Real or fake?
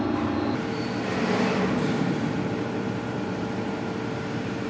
fake